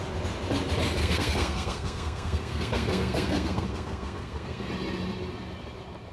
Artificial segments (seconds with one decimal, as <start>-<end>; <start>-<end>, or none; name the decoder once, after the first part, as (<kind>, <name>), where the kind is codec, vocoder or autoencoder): 1.0-4.7 (codec, SNAC)